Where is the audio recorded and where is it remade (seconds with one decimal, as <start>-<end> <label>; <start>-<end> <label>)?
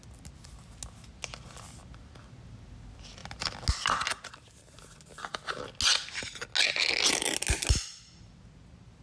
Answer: 0.0-9.0 recorded